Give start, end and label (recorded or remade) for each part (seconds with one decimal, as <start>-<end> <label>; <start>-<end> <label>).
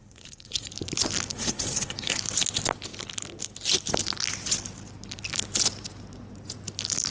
0.0-0.7 remade; 0.7-1.3 recorded; 1.3-2.2 remade; 2.2-7.1 recorded